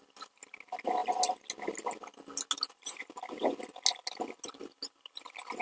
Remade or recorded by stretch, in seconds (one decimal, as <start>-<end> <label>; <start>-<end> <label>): 0.0-5.6 recorded